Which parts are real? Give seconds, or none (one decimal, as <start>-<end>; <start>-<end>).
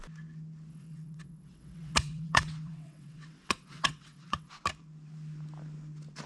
0.0-0.7; 4.5-6.3